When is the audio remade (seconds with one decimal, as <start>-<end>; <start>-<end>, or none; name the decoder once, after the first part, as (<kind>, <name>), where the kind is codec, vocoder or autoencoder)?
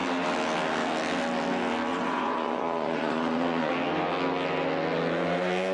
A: 1.9-3.7 (vocoder, Vocos)